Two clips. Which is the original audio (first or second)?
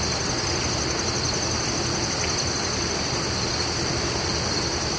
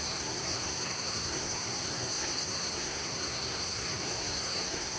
first